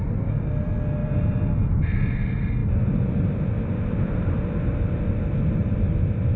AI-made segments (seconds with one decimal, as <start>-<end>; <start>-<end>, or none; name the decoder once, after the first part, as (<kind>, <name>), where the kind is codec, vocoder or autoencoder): 1.0-1.8 (vocoder, BigVGAN v2); 2.6-5.0; 5.6-6.4